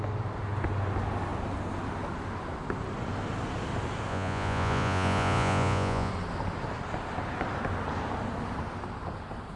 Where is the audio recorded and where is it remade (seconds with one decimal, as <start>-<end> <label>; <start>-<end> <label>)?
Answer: 0.0-4.1 recorded; 4.1-6.1 remade; 6.1-9.6 recorded